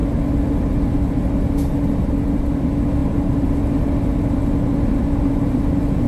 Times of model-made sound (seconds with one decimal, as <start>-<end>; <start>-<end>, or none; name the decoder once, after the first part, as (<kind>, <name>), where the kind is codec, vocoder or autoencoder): none